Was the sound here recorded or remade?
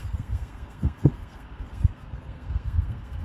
remade